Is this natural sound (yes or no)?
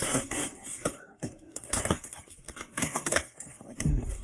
no